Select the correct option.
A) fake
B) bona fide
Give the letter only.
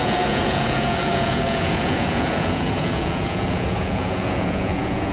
A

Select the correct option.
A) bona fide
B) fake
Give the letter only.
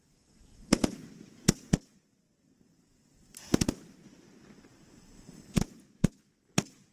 A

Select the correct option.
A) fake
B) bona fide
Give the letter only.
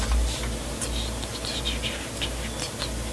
B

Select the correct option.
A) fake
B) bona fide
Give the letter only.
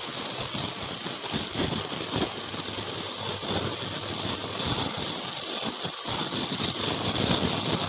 B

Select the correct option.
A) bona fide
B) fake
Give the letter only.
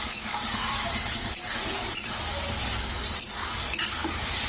B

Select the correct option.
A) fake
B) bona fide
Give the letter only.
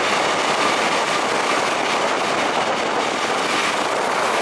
B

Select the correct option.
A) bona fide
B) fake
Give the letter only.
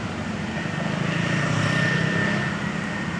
A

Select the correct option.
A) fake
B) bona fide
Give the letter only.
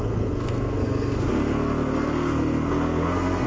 A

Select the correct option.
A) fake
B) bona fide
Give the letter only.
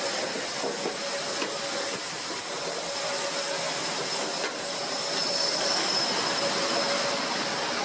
B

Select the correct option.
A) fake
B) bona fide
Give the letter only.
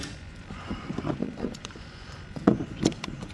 A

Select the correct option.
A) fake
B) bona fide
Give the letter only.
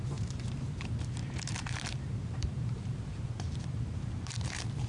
A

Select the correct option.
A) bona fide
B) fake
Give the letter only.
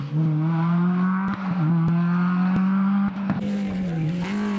A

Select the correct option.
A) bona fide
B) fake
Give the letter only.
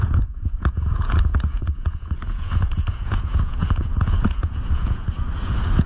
B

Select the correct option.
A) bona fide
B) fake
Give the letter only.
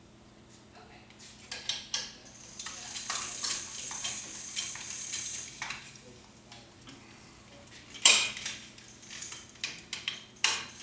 A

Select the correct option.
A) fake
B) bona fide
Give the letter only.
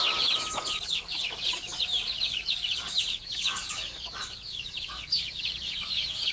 A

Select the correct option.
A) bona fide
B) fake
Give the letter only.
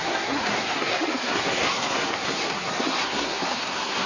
B